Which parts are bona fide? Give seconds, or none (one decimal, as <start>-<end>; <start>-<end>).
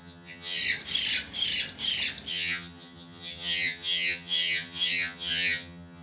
0.6-2.3